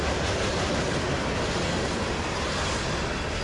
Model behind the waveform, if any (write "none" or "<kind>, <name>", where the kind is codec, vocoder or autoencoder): none